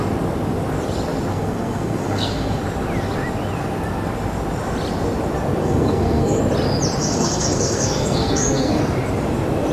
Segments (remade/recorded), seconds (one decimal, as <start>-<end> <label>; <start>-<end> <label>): 0.0-1.3 recorded; 1.3-2.6 remade; 2.6-5.6 recorded; 5.6-6.4 remade; 6.4-7.0 recorded; 7.0-8.8 remade; 8.8-9.7 recorded